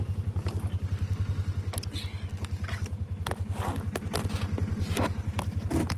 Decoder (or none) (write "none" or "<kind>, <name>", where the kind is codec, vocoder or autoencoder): none